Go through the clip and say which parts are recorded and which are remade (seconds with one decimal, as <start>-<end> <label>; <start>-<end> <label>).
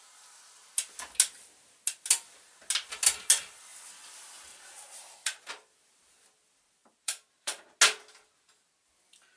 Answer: 0.0-3.7 recorded; 3.7-5.5 remade; 5.5-6.8 recorded; 6.8-7.7 remade; 7.7-9.4 recorded